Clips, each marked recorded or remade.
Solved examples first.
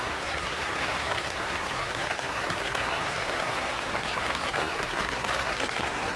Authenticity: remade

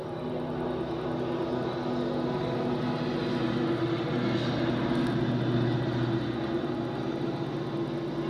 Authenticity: recorded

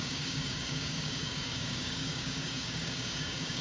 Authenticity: remade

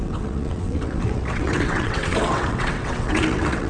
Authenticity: remade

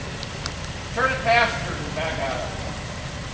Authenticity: recorded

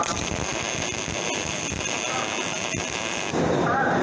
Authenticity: recorded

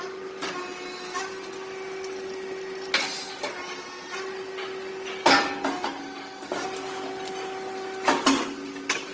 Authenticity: recorded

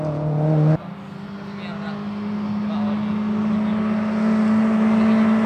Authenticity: recorded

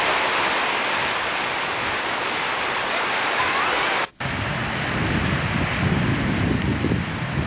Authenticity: remade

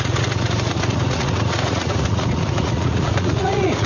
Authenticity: remade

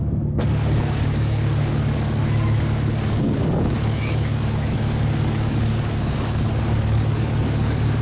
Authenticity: remade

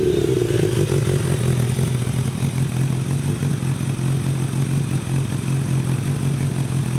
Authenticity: recorded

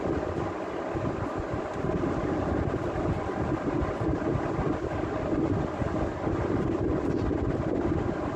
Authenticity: recorded